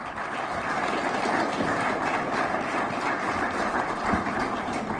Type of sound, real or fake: real